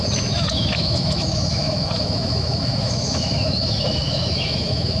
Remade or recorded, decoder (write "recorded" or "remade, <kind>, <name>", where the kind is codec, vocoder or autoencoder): remade, autoencoder, DAC-VAE